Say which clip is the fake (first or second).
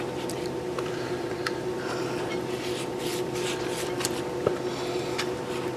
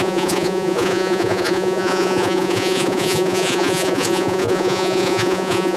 second